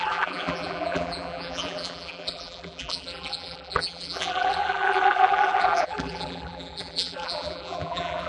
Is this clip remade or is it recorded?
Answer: remade